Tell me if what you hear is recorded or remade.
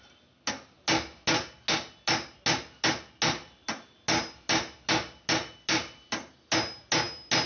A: recorded